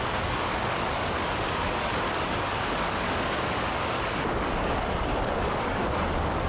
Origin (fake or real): fake